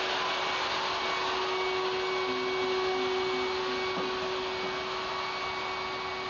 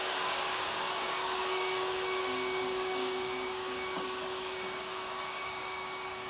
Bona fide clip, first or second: first